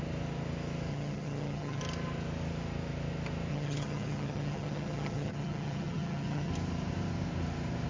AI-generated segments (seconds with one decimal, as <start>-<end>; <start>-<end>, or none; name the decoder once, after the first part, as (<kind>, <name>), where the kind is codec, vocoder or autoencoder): 0.9-1.8 (vocoder, HiFi-GAN); 3.5-6.5